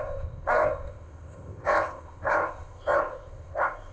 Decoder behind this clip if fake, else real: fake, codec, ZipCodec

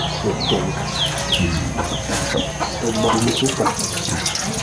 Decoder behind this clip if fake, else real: real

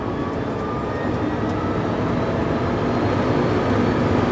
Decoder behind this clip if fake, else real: real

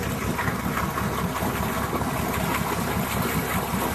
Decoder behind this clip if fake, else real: real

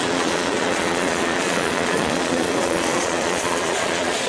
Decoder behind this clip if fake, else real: fake, vocoder, Vocos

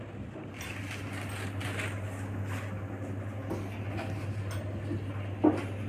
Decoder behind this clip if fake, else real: real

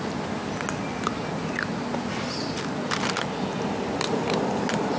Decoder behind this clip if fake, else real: real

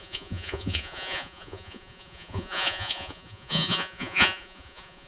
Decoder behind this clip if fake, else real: fake, vocoder, Vocos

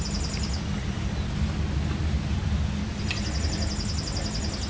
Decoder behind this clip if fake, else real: real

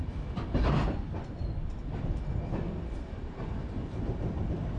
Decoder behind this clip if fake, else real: real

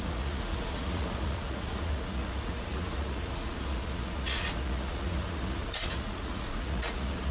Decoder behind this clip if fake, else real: fake, vocoder, Vocos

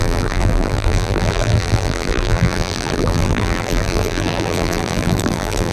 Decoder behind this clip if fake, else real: fake, vocoder, BigVGAN v2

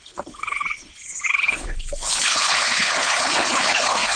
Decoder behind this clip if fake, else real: fake, codec, HILCodec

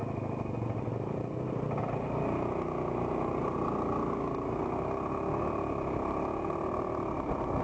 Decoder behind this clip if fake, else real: real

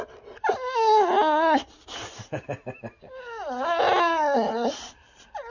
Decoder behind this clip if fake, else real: real